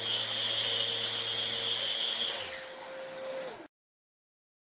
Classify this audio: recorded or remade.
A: recorded